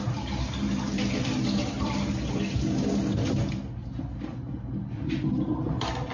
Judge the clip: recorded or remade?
recorded